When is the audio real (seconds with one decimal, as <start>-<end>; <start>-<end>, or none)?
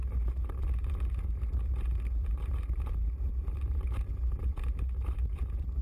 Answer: none